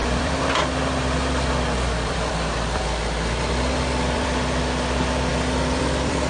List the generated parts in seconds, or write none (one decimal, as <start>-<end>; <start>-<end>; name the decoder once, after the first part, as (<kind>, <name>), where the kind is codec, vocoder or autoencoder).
0.0-6.3 (vocoder, BigVGAN v2)